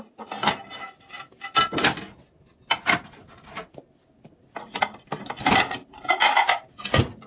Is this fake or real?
real